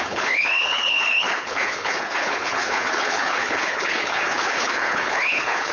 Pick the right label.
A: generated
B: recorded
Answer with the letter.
A